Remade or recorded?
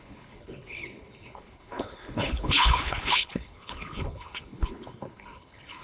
remade